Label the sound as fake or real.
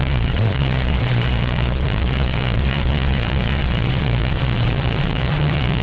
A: fake